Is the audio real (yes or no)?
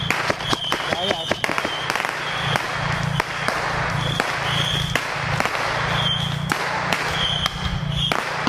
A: yes